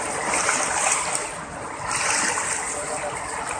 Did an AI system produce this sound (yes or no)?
yes